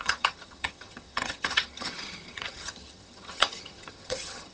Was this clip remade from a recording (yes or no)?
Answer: yes